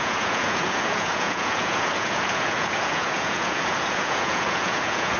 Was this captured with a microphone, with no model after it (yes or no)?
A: no